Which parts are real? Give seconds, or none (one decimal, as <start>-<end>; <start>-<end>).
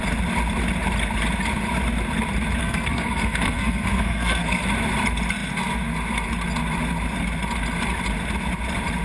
0.0-2.6; 4.6-9.0